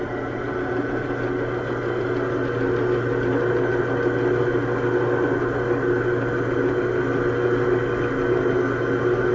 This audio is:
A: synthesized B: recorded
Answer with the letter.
B